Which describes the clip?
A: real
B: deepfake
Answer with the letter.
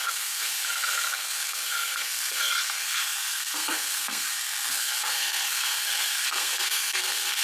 B